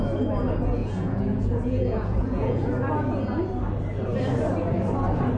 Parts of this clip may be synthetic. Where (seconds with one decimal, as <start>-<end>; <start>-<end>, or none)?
0.8-2.7